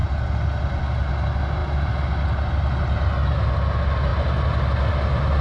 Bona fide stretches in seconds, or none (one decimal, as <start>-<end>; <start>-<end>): 0.0-5.4